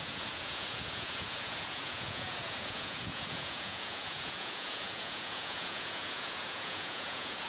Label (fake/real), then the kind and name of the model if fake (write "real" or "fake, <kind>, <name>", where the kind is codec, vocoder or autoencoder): fake, vocoder, Vocos